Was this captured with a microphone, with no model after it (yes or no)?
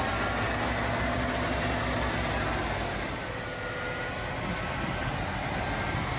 yes